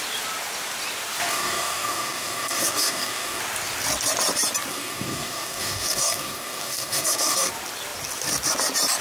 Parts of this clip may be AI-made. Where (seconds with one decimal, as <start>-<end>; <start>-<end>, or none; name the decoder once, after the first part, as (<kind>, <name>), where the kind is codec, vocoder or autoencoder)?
1.3-3.4 (codec, DAC); 4.7-7.5